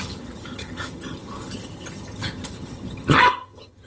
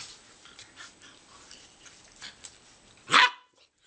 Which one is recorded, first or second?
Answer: second